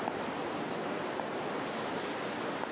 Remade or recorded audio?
recorded